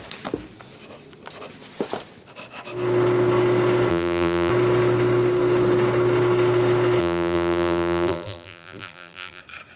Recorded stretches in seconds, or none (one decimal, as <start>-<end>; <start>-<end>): 0.0-3.9; 4.5-7.0; 9.4-9.8